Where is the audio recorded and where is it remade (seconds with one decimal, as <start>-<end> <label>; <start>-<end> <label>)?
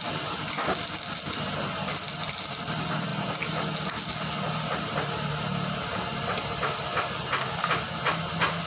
0.0-8.7 recorded